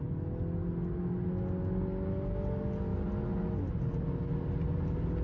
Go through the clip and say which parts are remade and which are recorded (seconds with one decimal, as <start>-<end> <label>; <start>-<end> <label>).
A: 0.0-5.2 recorded